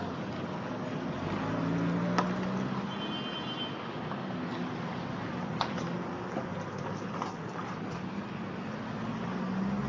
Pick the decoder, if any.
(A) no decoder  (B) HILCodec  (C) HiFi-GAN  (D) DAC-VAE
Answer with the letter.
A